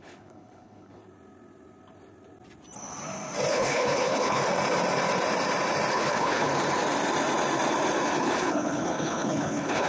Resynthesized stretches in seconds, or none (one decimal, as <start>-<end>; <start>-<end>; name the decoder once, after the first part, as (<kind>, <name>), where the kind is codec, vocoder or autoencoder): 0.0-1.0 (codec, HILCodec); 3.5-4.4; 5.9-6.5; 8.2-9.9